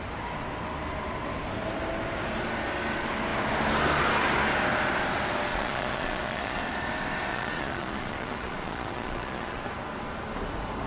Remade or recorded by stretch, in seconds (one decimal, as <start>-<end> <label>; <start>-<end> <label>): 0.0-5.5 recorded; 5.5-6.6 remade; 6.6-7.3 recorded; 7.3-9.6 remade; 9.6-10.9 recorded